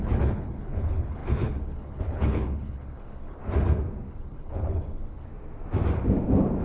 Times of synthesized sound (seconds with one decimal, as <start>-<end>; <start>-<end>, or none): 0.0-3.4; 4.1-5.3